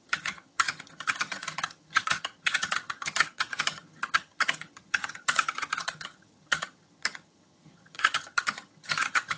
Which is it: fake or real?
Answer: fake